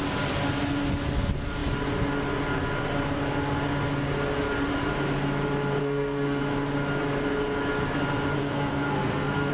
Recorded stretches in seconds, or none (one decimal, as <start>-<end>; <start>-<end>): 0.0-5.8; 6.4-8.4